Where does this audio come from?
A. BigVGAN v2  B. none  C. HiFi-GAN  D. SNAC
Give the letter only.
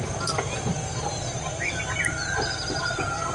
B